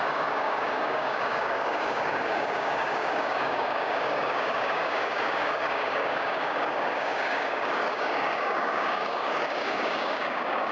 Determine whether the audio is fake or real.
fake